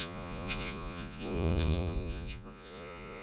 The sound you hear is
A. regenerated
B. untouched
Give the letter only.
A